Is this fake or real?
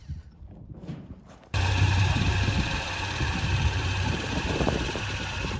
fake